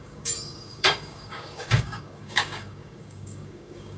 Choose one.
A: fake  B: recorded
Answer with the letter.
A